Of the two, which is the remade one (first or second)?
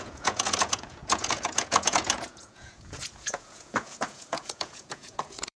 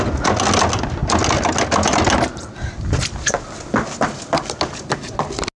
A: first